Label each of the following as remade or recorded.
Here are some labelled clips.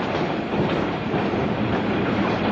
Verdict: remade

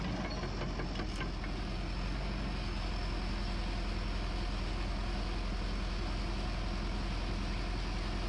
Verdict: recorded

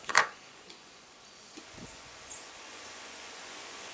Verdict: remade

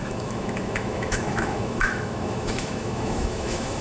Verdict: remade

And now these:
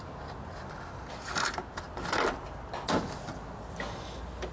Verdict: recorded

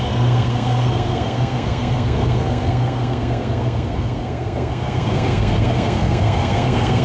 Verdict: remade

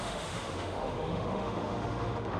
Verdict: remade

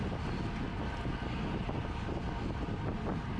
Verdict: recorded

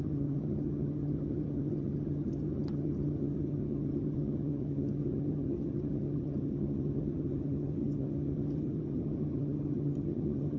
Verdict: remade